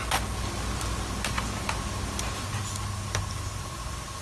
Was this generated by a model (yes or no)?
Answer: no